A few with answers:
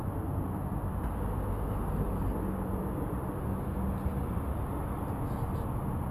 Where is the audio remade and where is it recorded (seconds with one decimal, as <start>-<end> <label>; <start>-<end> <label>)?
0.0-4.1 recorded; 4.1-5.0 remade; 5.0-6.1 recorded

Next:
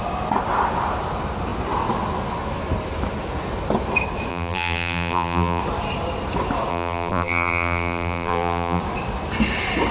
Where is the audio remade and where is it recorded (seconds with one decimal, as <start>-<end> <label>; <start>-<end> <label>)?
0.0-4.3 recorded; 4.3-5.6 remade; 5.6-6.7 recorded; 6.7-8.8 remade; 8.8-9.9 recorded

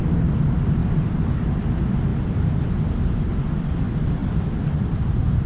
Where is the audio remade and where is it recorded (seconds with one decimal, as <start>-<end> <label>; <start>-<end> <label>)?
0.0-0.8 remade; 0.8-1.7 recorded; 1.7-2.1 remade; 2.1-3.8 recorded; 3.8-4.2 remade; 4.2-4.7 recorded; 4.7-5.5 remade

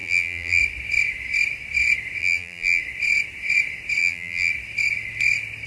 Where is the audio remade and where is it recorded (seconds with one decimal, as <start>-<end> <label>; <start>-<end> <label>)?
0.0-0.6 remade; 0.6-2.2 recorded; 2.2-2.8 remade; 2.8-4.0 recorded; 4.0-4.5 remade; 4.5-5.7 recorded

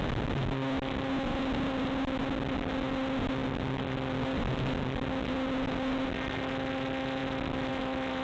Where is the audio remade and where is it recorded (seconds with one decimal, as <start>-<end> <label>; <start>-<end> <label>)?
0.0-8.2 recorded

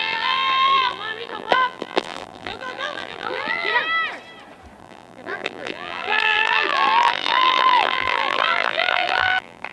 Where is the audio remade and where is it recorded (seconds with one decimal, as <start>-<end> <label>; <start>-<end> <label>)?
0.0-3.7 remade; 3.7-4.8 recorded; 4.8-9.7 remade